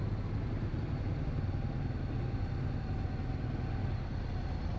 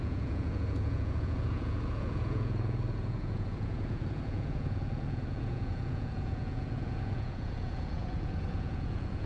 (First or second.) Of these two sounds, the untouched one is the first